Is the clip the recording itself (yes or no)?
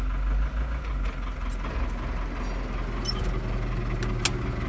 yes